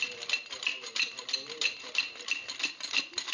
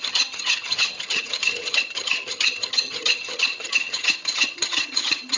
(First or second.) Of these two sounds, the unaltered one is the first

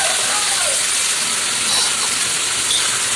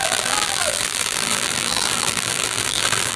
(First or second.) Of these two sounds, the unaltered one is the first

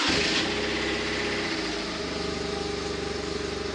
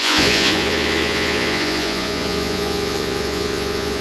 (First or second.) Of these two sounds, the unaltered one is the first